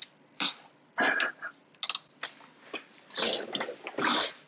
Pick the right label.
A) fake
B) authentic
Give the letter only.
B